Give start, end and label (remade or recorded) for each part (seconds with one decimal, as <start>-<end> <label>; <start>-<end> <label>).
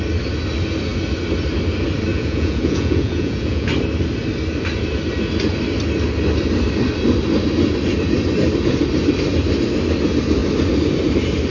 0.0-2.1 recorded; 2.1-3.7 remade; 3.7-11.5 recorded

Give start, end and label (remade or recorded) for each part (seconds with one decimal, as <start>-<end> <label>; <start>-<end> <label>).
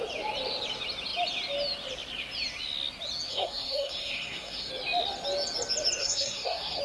0.0-3.3 recorded; 3.3-4.7 remade; 4.7-6.0 recorded; 6.0-6.8 remade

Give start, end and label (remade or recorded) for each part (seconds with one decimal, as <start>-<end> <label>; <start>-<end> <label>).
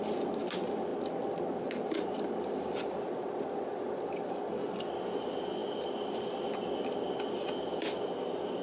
0.0-8.6 recorded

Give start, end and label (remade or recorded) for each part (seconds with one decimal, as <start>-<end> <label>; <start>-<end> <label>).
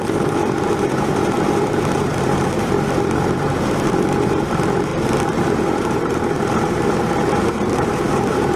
0.0-4.9 remade; 4.9-5.6 recorded; 5.6-8.6 remade